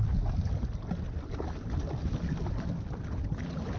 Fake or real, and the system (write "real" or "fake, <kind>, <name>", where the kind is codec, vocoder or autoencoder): real